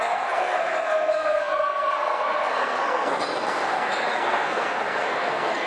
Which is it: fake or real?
fake